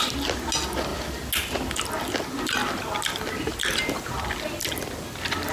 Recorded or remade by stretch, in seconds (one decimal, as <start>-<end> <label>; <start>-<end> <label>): 0.0-5.5 recorded